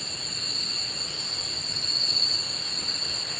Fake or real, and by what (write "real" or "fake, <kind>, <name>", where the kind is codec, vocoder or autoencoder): real